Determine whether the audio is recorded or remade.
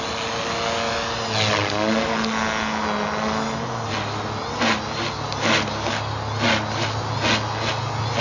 recorded